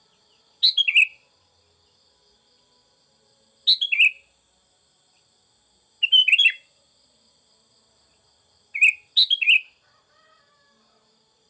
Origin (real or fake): real